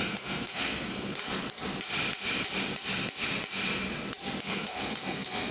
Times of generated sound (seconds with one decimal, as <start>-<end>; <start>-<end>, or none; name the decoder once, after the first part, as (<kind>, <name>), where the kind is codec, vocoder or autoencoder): 0.0-1.2 (codec, SNAC); 4.4-5.5